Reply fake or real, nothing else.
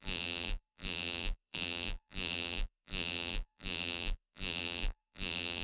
fake